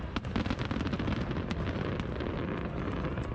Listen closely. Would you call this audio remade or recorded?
recorded